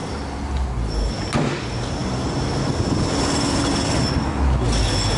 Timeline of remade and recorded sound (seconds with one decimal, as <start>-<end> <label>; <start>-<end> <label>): 0.0-5.2 recorded